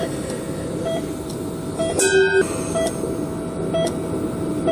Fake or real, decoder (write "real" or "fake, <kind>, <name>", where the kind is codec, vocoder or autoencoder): real